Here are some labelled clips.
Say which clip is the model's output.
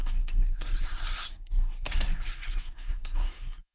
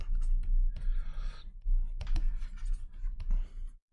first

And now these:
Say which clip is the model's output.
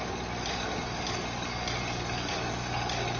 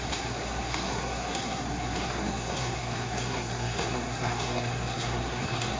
second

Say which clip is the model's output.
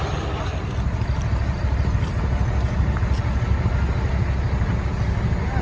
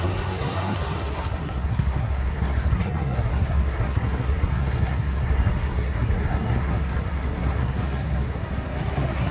second